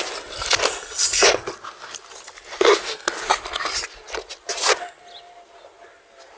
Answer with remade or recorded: recorded